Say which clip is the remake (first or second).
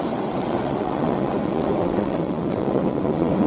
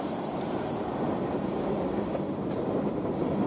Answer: first